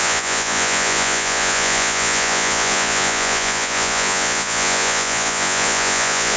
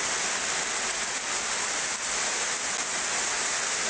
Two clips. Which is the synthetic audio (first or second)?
first